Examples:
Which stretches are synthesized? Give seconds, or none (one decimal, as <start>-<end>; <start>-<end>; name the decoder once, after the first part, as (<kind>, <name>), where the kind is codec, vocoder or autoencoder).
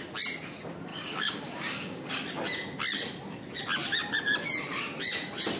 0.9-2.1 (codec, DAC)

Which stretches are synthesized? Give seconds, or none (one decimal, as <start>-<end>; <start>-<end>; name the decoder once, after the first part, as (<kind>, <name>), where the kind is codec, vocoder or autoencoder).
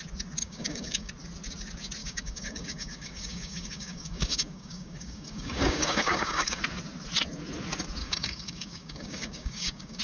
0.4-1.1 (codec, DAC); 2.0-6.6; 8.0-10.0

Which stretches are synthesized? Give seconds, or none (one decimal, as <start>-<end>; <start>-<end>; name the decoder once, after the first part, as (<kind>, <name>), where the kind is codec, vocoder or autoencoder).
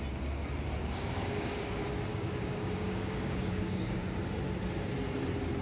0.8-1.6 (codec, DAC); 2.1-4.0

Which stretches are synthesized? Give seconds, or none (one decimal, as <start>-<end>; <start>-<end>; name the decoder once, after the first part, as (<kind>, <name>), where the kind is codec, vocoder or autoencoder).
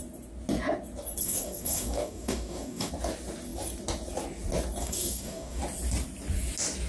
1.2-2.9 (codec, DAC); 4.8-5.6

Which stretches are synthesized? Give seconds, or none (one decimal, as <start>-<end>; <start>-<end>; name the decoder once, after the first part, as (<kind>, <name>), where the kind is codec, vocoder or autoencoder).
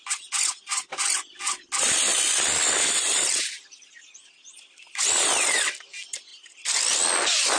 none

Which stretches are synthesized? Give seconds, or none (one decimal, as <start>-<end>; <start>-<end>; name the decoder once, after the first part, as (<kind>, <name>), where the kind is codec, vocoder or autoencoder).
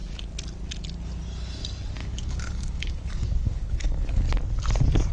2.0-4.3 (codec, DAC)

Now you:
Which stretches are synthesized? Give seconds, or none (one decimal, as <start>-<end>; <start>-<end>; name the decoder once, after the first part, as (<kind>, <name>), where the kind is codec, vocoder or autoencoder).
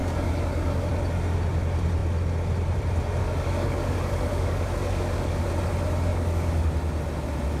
0.0-0.9 (codec, DAC); 3.2-5.5; 6.1-6.7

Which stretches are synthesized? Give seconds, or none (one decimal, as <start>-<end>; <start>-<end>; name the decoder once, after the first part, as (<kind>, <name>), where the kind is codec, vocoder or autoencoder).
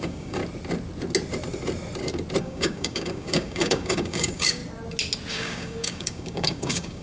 0.0-0.4 (codec, DAC); 2.4-4.6; 5.3-7.0